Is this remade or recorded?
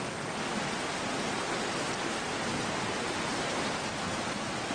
recorded